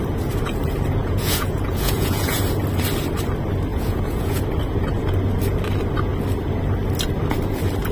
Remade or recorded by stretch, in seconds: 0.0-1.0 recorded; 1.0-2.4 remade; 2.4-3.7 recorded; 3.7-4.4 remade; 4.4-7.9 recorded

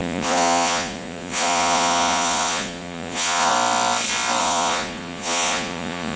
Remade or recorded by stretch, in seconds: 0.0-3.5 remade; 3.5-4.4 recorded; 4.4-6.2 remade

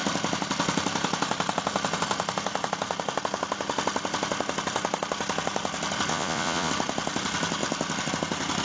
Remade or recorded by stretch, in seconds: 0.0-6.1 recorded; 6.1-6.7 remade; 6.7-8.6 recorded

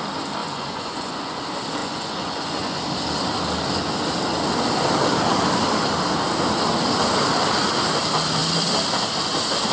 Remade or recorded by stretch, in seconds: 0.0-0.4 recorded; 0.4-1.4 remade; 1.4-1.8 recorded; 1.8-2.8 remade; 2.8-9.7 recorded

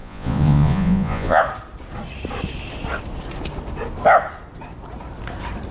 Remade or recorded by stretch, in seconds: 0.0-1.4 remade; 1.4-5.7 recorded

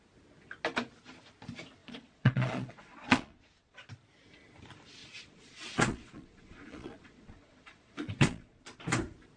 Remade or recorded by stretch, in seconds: 0.0-1.8 recorded; 1.8-3.9 remade; 3.9-5.0 recorded; 5.0-8.6 remade; 8.6-9.4 recorded

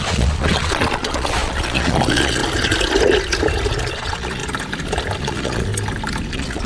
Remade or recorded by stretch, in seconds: 0.0-2.4 remade; 2.4-3.9 recorded; 3.9-4.4 remade; 4.4-5.2 recorded; 5.2-5.7 remade; 5.7-6.3 recorded; 6.3-6.7 remade

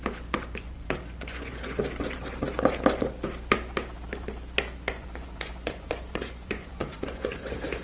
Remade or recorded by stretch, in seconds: 0.0-1.8 remade; 1.8-4.9 recorded; 4.9-7.8 remade